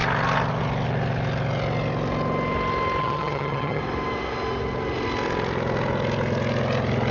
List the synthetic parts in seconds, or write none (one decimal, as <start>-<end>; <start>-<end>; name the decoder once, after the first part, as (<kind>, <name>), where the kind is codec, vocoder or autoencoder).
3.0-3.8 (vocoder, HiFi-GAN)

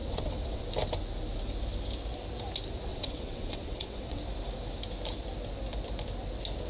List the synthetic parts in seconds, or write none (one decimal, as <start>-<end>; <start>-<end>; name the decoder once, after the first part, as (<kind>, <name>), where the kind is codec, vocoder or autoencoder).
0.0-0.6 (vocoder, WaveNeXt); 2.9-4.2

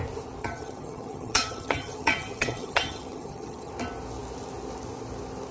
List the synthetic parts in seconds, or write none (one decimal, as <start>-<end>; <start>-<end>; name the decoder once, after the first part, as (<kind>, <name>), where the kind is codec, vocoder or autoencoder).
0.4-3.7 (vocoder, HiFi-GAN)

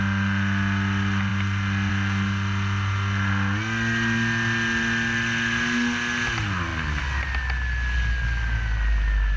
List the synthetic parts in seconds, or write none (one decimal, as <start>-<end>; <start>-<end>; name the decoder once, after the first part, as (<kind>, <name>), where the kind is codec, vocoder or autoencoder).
none

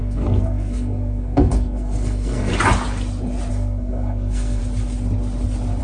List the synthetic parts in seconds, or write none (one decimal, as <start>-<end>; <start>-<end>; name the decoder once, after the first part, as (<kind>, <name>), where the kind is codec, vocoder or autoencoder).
0.0-2.5 (codec, SNAC); 3.5-4.6